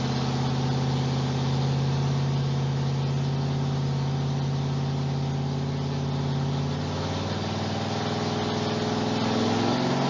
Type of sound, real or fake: real